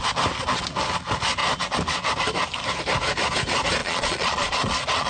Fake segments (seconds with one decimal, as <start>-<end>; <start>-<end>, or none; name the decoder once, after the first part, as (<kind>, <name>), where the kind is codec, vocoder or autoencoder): 3.8-5.1 (vocoder, Vocos)